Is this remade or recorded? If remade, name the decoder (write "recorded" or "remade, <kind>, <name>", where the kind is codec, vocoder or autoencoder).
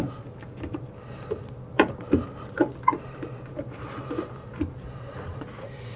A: recorded